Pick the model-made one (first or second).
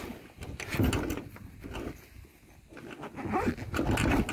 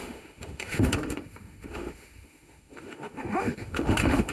second